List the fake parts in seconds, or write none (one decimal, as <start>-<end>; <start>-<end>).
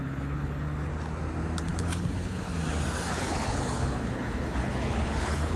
0.0-0.9; 1.6-2.5; 3.1-5.6